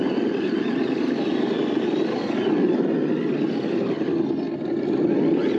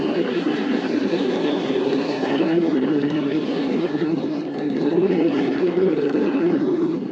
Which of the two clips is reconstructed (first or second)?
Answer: second